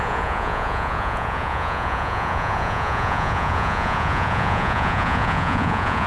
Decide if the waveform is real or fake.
fake